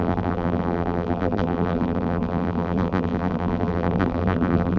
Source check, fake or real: fake